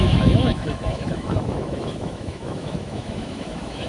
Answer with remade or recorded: remade